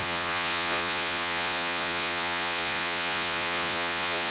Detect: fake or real fake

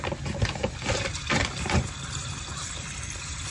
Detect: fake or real real